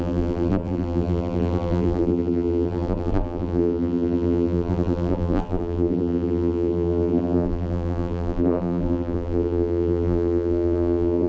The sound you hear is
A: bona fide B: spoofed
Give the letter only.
B